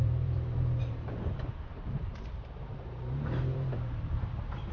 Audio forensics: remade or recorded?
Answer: remade